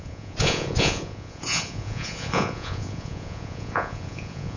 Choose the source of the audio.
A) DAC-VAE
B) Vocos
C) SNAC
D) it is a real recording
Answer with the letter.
B